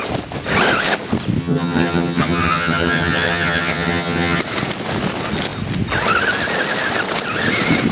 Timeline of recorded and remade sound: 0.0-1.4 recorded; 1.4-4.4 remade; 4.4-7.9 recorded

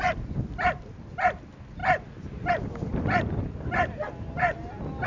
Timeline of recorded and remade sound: 0.0-5.1 recorded

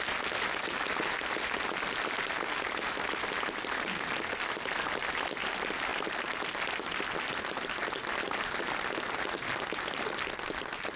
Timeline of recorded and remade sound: 0.0-11.0 recorded

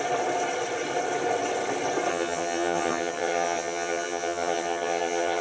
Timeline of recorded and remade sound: 0.0-2.1 recorded; 2.1-5.4 remade